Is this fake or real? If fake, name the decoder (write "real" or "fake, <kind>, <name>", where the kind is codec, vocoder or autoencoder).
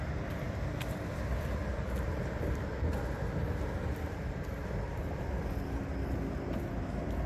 real